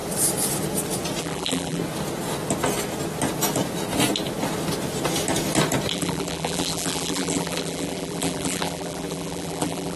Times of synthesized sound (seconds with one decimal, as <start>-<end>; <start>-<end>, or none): 1.2-1.8; 5.9-10.0